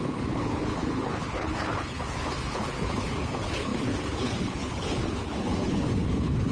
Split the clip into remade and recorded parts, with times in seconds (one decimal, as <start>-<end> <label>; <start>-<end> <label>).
0.0-6.5 remade